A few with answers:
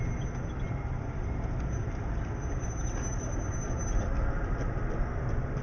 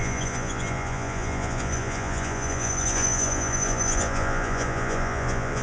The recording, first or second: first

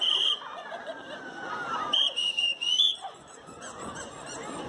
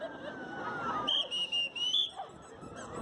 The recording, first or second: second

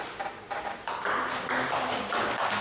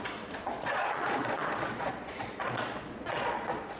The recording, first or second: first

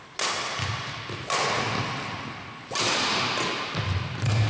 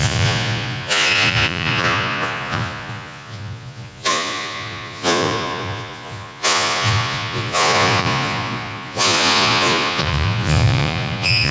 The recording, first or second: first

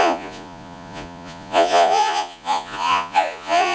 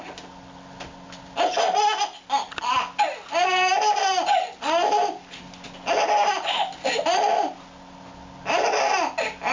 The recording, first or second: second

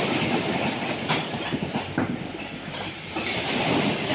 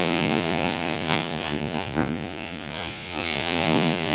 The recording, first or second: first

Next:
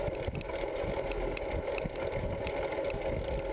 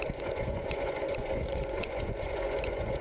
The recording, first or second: first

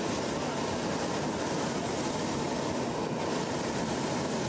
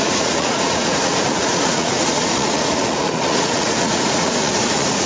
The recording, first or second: first